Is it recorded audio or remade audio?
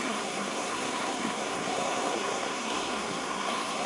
remade